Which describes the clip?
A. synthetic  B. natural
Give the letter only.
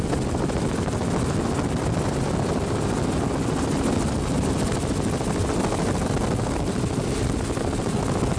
B